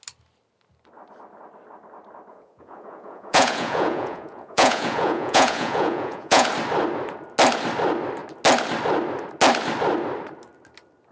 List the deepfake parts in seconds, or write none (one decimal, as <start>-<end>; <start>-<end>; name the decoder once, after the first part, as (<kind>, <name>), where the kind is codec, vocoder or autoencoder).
2.3-6.5 (vocoder, Vocos)